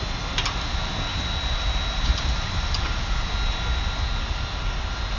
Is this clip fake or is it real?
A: real